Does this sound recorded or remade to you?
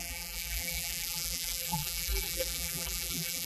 remade